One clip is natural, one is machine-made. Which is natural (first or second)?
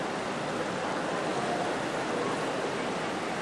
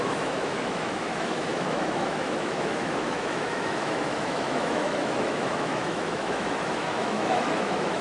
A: first